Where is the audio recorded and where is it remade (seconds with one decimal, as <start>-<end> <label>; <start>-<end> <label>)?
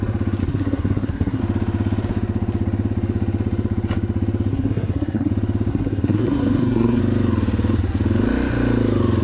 0.0-0.4 recorded; 0.4-1.4 remade; 1.4-4.5 recorded; 4.5-5.3 remade; 5.3-5.7 recorded; 5.7-7.0 remade; 7.0-9.2 recorded